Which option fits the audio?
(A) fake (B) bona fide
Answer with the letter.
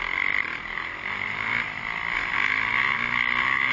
B